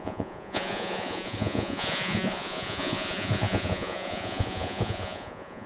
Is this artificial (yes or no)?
yes